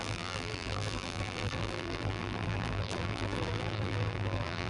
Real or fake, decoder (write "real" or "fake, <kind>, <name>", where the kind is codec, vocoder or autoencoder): fake, vocoder, BigVGAN v2